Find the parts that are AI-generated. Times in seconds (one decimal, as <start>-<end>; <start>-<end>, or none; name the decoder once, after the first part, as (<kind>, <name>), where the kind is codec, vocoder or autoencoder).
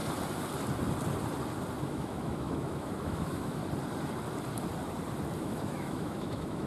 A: 1.8-3.6 (autoencoder, DAC-VAE); 5.4-6.7